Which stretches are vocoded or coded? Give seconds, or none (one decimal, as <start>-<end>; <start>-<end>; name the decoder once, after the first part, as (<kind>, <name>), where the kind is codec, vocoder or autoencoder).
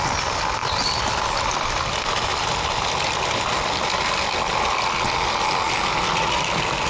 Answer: none